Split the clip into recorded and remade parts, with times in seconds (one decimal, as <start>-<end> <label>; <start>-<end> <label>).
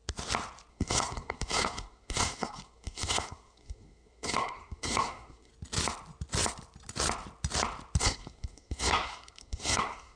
0.0-0.7 recorded; 0.7-5.5 remade; 5.5-8.0 recorded; 8.0-10.2 remade